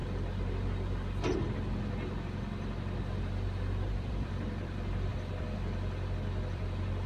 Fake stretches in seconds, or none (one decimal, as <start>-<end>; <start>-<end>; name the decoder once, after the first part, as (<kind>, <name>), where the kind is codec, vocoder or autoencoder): 3.9-7.1 (vocoder, BigVGAN v2)